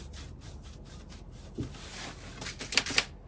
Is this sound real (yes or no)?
yes